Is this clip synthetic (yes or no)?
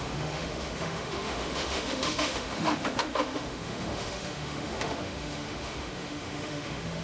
yes